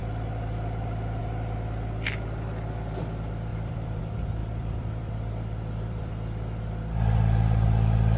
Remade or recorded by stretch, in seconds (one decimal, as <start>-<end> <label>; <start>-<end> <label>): 0.0-3.5 recorded; 3.5-4.0 remade; 4.0-4.4 recorded; 4.4-6.1 remade; 6.1-8.2 recorded